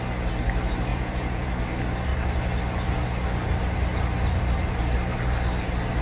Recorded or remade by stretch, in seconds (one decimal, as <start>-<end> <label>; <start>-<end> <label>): 0.0-0.9 recorded; 0.9-1.5 remade; 1.5-6.0 recorded